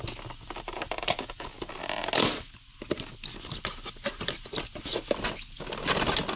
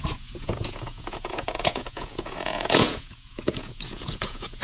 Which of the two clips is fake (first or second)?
second